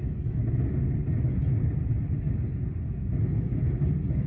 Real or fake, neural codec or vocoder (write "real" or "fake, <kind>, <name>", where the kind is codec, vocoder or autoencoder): real